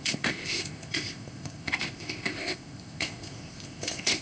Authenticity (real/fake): fake